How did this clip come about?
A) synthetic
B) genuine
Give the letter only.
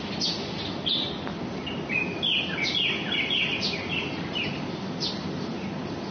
B